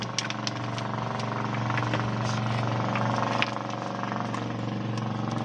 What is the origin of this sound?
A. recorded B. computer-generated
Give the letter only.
A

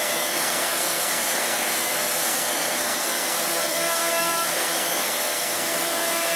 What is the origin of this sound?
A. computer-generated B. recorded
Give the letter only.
A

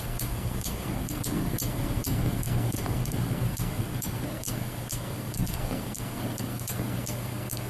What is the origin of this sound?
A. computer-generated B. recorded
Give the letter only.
A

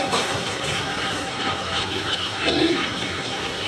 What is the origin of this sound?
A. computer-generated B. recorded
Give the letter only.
A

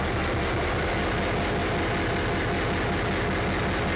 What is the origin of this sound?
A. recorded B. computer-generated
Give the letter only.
A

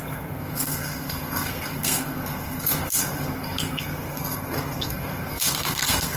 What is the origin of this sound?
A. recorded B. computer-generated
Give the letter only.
B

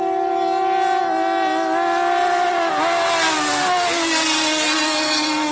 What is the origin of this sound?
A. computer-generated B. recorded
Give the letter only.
B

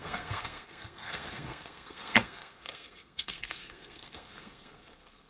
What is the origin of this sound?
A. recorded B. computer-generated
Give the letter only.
B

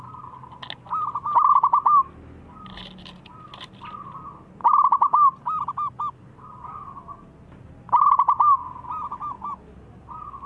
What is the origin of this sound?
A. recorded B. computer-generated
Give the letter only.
A